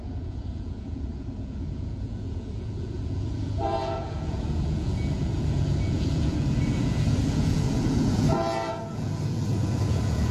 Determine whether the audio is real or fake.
fake